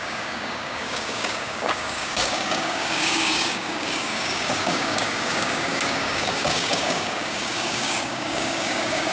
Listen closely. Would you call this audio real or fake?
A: fake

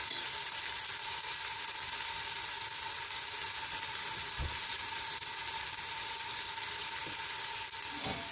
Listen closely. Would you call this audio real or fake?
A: real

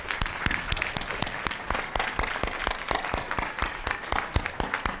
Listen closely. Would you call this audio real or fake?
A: real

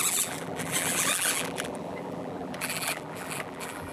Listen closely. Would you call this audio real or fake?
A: fake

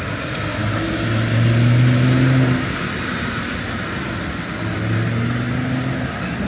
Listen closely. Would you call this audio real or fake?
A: real